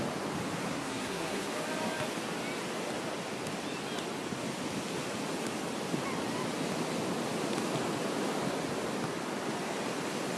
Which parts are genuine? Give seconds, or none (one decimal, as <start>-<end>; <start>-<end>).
0.0-0.7; 1.5-10.4